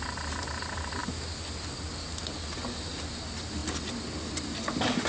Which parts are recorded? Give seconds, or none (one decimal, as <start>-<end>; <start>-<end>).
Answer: 0.0-5.1